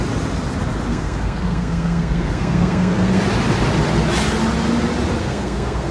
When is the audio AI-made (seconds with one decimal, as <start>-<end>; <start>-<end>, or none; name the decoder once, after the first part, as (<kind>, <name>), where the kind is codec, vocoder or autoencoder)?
0.9-3.2 (codec, SNAC); 5.2-5.9